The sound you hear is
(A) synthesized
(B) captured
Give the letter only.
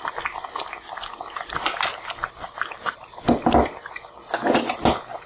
B